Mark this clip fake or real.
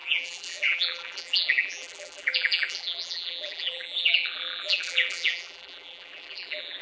fake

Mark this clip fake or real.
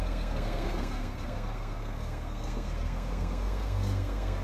fake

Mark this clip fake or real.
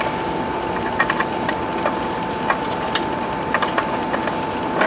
real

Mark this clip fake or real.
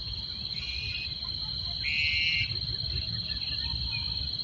real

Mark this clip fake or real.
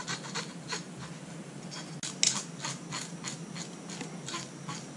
real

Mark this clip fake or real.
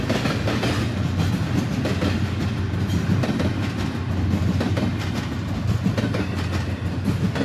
real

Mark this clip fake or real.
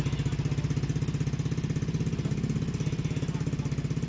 real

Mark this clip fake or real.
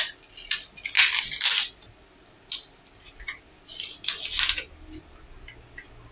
real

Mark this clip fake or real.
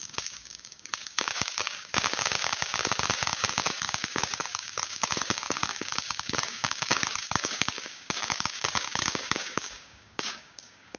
fake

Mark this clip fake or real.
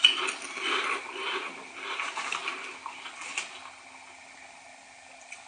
real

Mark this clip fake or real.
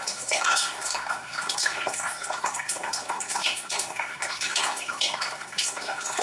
fake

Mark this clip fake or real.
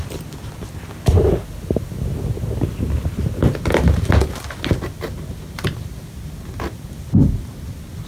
real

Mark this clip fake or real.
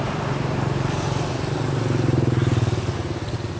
real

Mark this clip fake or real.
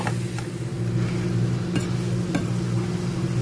real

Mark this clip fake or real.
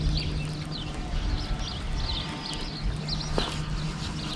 real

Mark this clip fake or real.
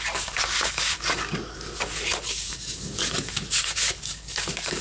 fake